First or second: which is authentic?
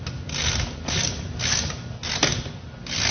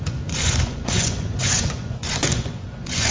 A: first